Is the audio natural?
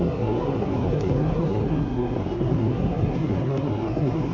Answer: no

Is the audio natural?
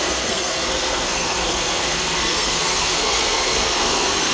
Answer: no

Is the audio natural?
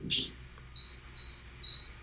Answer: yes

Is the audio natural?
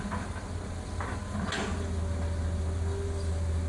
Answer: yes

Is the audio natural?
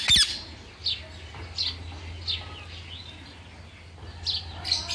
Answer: yes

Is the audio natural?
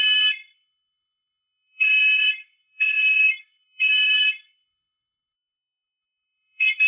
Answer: no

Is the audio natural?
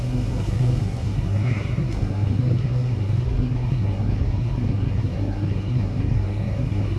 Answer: no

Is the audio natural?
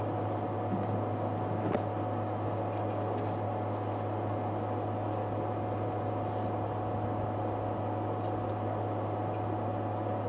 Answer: yes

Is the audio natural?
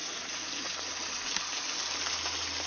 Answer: yes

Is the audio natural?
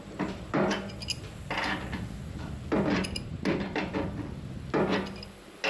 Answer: yes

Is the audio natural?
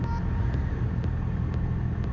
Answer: yes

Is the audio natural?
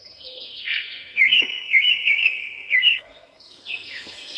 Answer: no